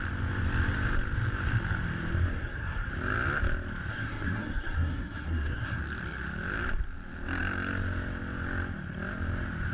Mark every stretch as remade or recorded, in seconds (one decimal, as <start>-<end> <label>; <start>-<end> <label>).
0.0-2.3 recorded; 2.3-2.9 remade; 2.9-3.9 recorded; 3.9-5.8 remade; 5.8-9.7 recorded